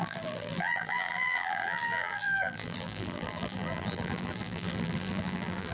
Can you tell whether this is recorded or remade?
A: remade